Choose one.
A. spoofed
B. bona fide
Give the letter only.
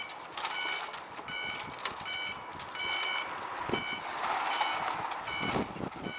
B